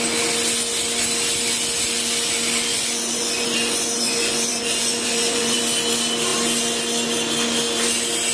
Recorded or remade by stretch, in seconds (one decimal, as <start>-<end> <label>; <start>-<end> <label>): 0.0-2.7 recorded; 2.7-5.6 remade; 5.6-8.3 recorded